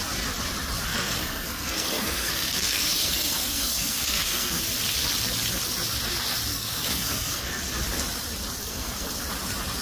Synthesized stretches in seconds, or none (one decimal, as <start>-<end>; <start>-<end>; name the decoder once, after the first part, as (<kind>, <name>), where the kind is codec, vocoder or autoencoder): 0.9-4.6 (codec, SNAC); 6.5-7.5; 8.6-9.1